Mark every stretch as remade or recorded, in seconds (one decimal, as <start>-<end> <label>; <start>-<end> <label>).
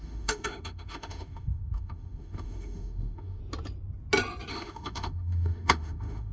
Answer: 0.0-3.4 remade; 3.4-4.5 recorded; 4.5-6.3 remade